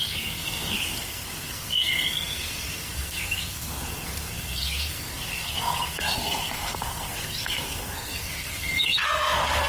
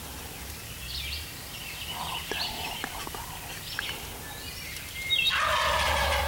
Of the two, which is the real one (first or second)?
second